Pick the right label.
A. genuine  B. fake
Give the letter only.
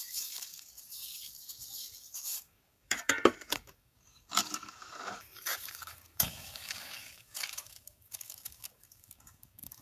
B